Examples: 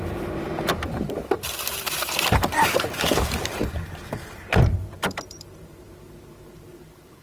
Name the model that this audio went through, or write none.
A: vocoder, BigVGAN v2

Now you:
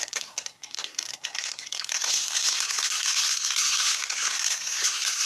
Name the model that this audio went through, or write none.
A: codec, SNAC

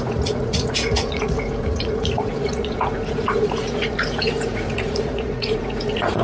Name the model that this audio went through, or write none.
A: vocoder, Vocos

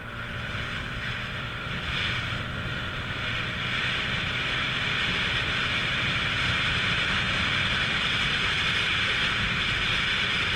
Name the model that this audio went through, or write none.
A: vocoder, BigVGAN v2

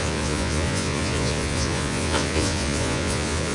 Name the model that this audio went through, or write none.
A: vocoder, Vocos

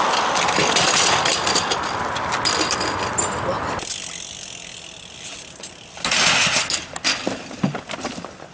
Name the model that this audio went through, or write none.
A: none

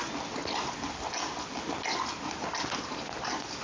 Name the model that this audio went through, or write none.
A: none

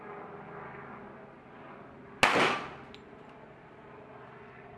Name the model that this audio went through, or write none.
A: none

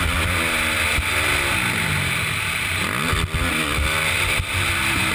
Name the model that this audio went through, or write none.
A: none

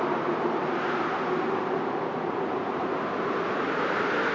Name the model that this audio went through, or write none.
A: none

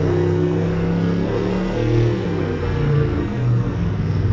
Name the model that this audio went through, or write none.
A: codec, SNAC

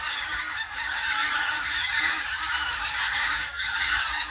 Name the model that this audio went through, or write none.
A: codec, DAC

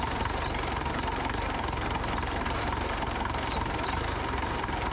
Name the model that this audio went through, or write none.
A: vocoder, BigVGAN v2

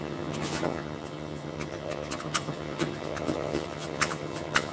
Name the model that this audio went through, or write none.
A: vocoder, HiFi-GAN